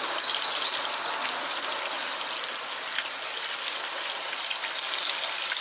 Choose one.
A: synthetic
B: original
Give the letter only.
B